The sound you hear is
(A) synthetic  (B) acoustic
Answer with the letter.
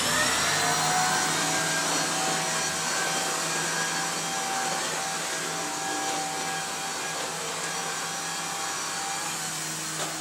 B